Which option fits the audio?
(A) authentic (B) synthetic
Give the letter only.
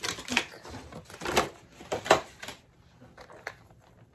A